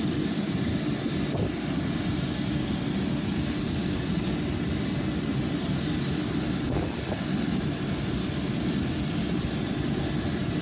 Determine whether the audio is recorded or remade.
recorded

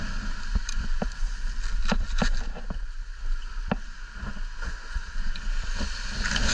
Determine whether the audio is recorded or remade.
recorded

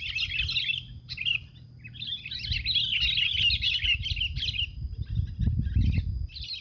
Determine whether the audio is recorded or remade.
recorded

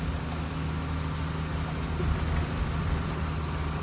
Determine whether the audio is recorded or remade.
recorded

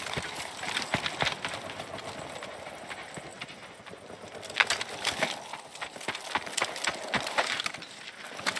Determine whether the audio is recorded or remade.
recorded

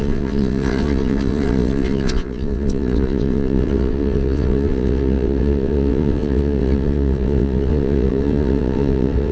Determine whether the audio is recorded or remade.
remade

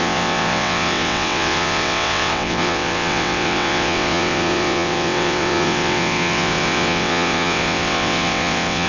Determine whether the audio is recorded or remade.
remade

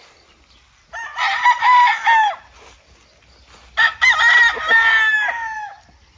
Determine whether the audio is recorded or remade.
recorded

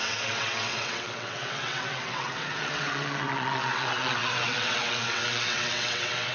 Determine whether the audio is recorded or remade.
remade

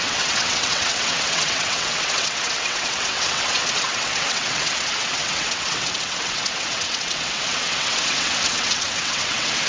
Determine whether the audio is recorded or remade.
remade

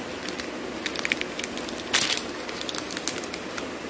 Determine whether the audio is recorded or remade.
recorded